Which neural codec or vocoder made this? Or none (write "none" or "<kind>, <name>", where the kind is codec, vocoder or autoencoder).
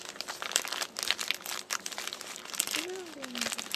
none